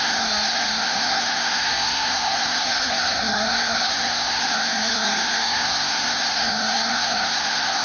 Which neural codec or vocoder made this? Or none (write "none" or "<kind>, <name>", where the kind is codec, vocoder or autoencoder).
codec, SNAC